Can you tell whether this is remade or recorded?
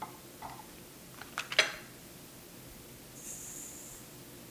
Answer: recorded